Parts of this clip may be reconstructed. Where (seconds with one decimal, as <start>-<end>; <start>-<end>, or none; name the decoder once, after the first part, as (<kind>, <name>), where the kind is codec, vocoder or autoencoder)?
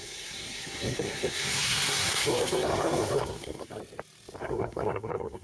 0.0-3.8 (codec, SNAC); 4.4-5.4